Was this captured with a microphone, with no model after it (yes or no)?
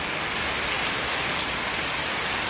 yes